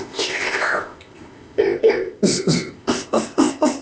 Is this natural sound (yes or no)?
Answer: no